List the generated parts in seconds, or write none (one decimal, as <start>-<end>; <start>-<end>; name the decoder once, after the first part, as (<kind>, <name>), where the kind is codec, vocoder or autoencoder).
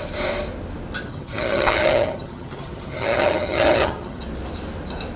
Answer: 1.1-4.2 (vocoder, HiFi-GAN)